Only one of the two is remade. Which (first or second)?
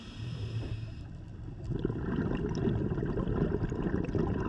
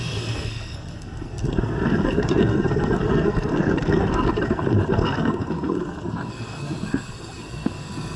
second